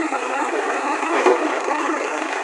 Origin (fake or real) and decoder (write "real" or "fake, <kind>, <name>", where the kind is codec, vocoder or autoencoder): fake, codec, SNAC